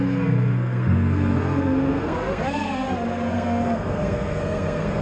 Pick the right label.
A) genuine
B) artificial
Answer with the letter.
B